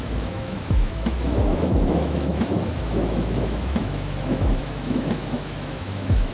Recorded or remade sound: remade